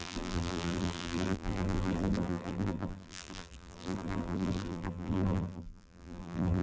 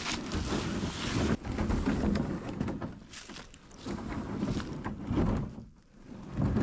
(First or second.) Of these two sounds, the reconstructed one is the first